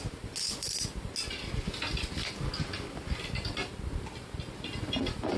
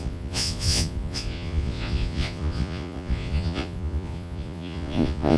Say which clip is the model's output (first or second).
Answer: second